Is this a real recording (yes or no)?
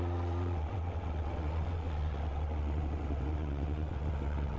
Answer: no